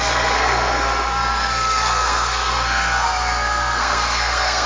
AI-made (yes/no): yes